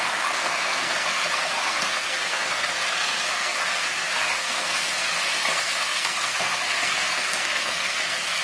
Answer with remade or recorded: remade